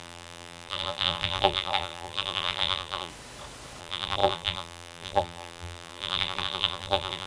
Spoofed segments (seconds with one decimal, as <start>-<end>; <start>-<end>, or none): 0.0-3.1; 3.8-7.3